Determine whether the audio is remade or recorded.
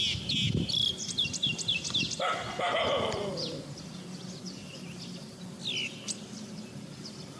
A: recorded